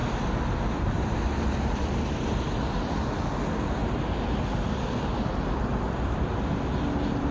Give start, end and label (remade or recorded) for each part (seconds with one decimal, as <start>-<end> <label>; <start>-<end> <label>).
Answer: 0.0-7.3 recorded